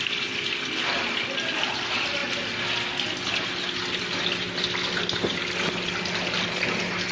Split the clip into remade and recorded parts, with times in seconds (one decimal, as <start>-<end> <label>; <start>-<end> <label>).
0.0-7.1 recorded